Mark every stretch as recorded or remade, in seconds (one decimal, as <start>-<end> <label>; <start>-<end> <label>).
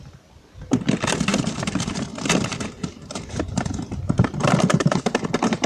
0.0-1.3 recorded; 1.3-1.9 remade; 1.9-2.5 recorded; 2.5-5.7 remade